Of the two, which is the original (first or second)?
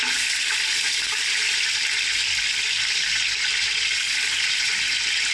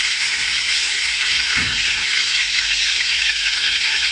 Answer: first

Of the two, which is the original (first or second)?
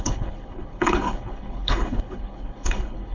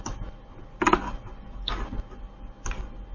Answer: second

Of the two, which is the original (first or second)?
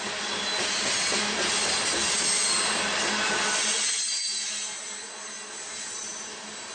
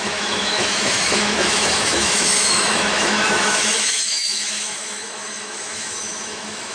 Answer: first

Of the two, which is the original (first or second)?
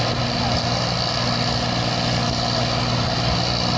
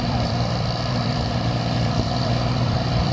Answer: first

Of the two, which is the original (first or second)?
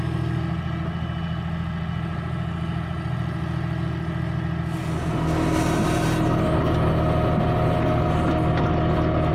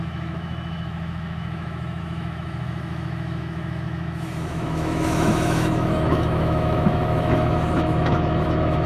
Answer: first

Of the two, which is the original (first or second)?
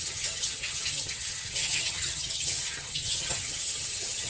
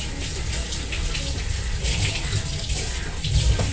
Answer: second